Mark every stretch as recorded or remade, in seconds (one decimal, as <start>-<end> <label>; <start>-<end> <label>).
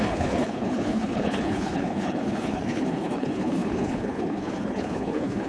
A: 0.0-5.5 remade